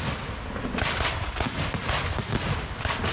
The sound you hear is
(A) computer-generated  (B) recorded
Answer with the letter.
B